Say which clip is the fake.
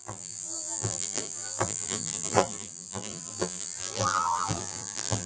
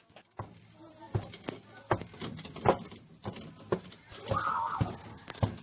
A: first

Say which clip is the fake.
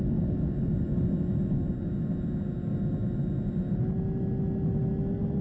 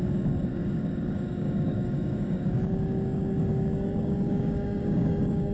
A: second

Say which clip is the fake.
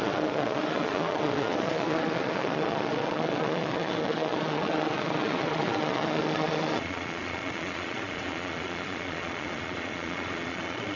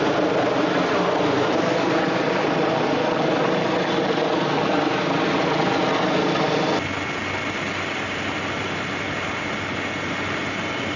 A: first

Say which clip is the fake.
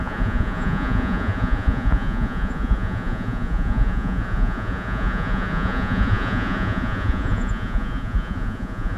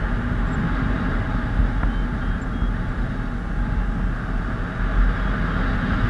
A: first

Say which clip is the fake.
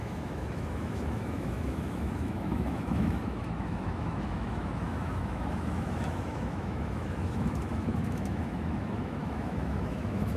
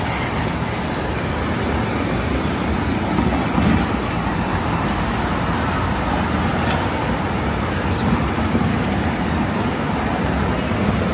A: first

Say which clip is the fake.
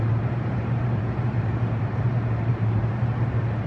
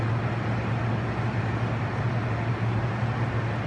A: first